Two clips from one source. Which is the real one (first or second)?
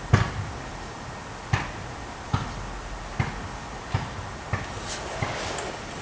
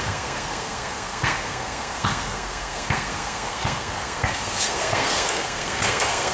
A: first